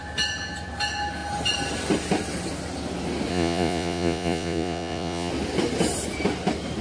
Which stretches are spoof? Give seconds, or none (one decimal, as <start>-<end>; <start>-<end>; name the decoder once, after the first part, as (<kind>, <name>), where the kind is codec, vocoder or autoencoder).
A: 3.3-5.3 (vocoder, Vocos)